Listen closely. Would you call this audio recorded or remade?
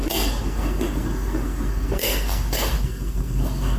remade